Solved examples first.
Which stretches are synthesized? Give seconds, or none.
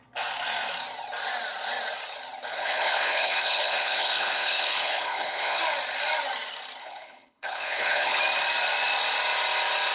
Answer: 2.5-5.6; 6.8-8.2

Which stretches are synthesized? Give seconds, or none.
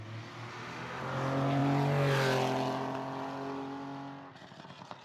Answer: 0.5-1.0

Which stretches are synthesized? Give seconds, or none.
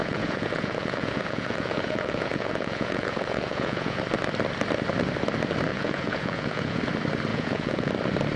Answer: 0.0-4.0; 5.7-6.8; 7.3-7.9